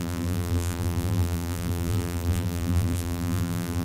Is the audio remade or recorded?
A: remade